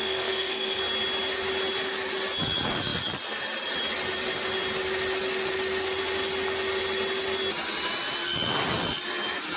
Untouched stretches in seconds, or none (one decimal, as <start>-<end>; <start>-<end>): 0.8-9.6